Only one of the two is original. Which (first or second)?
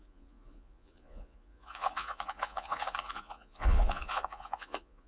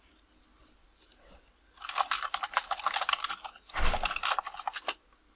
second